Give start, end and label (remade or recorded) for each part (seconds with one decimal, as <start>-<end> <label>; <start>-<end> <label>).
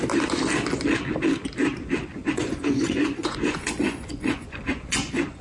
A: 0.0-2.1 recorded; 2.1-5.4 remade